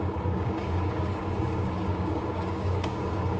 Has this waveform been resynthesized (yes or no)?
yes